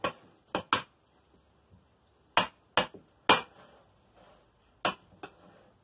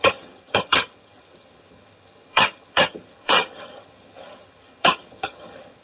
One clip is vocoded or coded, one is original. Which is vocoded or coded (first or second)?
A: second